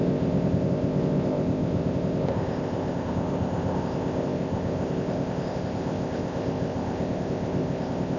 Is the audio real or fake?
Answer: fake